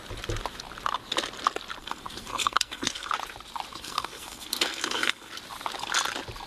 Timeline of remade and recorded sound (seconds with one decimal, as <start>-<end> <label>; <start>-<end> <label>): 0.0-1.8 recorded; 1.8-3.1 remade; 3.1-3.7 recorded; 3.7-5.3 remade; 5.3-6.5 recorded